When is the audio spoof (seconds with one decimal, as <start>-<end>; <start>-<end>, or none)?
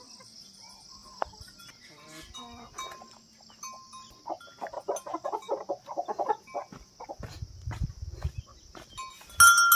none